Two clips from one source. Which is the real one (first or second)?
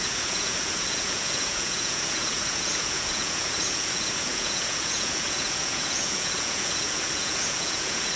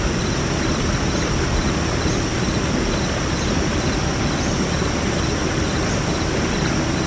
second